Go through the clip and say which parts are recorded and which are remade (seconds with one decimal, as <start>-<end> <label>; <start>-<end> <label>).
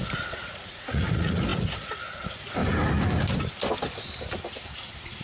0.0-2.6 remade; 2.6-5.2 recorded